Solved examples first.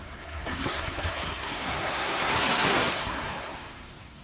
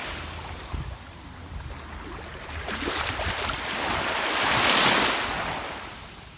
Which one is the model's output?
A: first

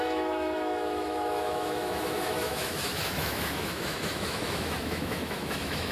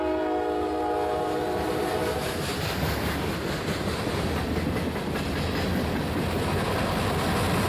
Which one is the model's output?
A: first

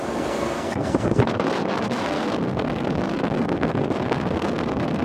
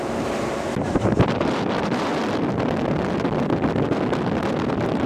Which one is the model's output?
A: first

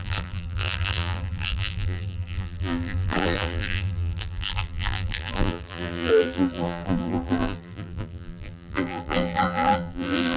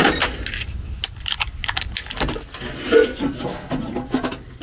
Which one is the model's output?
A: first